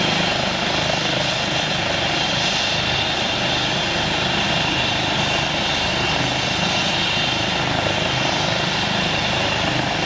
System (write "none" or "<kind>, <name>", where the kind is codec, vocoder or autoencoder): none